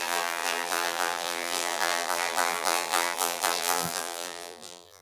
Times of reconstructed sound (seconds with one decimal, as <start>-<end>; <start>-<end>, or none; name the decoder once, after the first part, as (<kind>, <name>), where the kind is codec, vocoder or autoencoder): 0.0-5.0 (vocoder, BigVGAN v2)